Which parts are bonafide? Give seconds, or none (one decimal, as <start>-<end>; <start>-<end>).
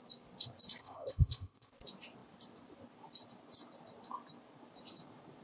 0.0-0.8; 1.7-5.4